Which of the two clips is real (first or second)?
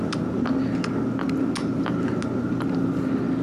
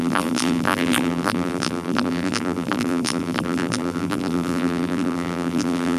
first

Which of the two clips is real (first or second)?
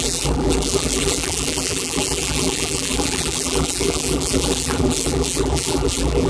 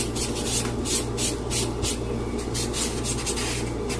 second